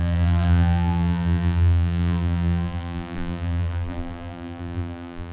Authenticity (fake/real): fake